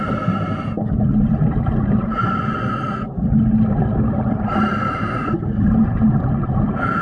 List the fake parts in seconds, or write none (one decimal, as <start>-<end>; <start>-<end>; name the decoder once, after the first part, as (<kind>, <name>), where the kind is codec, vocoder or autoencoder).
0.0-2.2 (vocoder, BigVGAN v2); 4.1-7.0